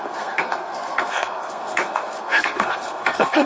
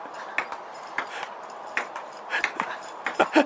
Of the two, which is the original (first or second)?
second